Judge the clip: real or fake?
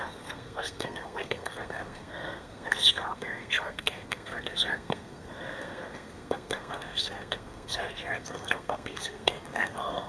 fake